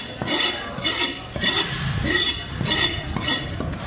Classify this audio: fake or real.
fake